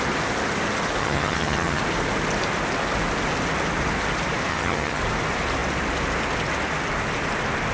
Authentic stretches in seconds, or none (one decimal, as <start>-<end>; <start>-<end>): 0.0-1.0; 1.8-4.5; 5.0-7.7